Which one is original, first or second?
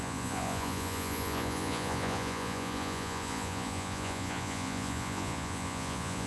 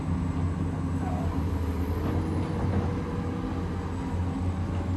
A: second